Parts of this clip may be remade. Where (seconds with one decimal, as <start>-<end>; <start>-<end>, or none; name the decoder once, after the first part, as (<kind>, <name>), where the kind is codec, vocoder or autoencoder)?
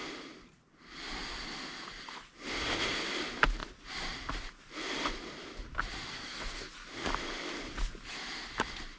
6.1-6.7 (codec, SNAC)